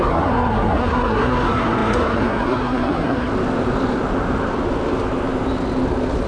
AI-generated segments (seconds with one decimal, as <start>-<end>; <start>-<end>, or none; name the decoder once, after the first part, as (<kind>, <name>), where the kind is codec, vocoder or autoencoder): 0.0-3.3 (codec, SNAC)